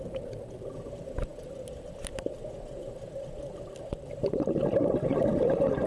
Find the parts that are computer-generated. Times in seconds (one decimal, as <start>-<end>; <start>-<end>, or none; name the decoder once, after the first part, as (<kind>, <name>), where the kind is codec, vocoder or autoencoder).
none